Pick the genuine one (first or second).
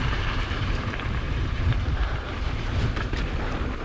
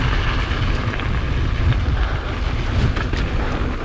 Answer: second